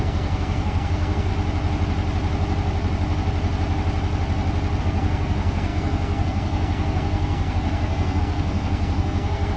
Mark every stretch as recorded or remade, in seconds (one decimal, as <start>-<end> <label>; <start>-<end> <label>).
0.0-1.3 remade; 1.3-4.8 recorded; 4.8-9.6 remade